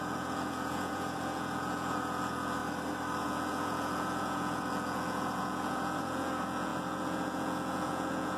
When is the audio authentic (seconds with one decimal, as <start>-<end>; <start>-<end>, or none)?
2.6-3.2